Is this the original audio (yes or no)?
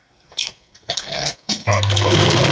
no